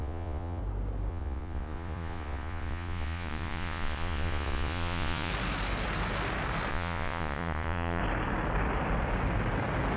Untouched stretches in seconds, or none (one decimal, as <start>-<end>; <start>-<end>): 0.6-1.1; 5.3-6.7; 8.0-10.0